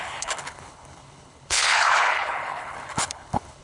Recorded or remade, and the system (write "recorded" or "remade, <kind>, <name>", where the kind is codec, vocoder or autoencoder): remade, codec, HILCodec